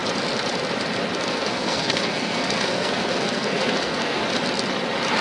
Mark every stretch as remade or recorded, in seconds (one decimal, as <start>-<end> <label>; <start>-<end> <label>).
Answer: 0.0-1.3 recorded; 1.3-4.2 remade; 4.2-5.2 recorded